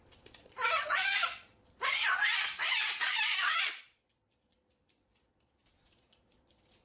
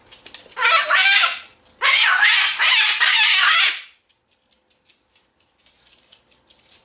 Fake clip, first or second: first